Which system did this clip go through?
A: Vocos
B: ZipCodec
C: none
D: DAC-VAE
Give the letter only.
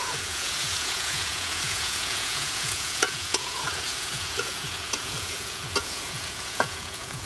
A